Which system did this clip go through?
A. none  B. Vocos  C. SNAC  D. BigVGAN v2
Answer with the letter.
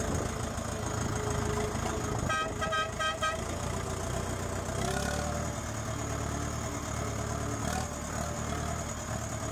A